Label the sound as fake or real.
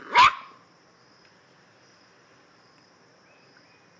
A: real